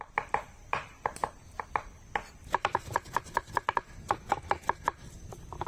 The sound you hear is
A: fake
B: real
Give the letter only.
A